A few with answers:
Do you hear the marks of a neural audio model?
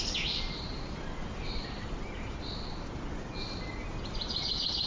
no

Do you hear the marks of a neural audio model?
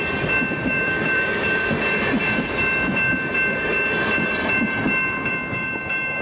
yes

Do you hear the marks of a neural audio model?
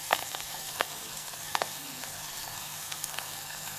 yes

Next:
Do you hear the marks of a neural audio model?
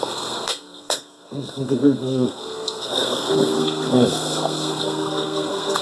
yes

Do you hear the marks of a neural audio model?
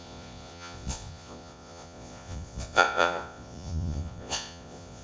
yes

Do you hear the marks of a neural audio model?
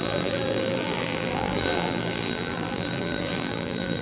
yes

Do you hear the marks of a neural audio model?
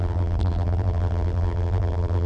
yes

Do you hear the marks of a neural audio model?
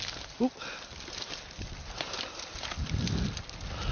no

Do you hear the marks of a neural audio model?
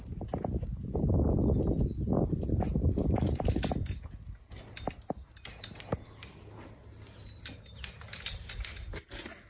no